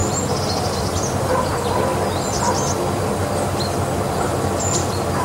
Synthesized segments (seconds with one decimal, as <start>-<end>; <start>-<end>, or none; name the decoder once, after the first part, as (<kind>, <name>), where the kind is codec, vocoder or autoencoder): none